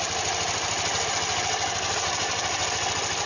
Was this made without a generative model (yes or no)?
yes